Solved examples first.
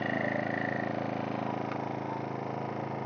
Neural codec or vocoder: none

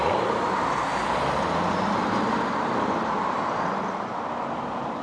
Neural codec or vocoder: vocoder, BigVGAN v2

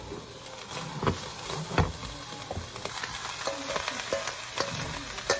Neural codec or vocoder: none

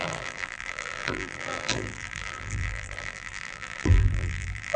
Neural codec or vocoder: vocoder, BigVGAN v2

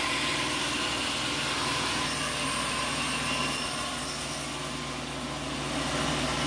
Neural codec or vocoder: none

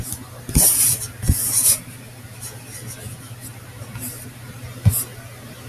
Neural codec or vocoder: none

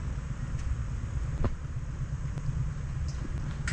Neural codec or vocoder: none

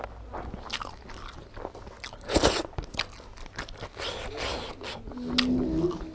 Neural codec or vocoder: none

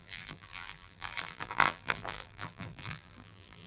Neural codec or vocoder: vocoder, BigVGAN v2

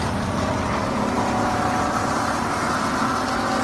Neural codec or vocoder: none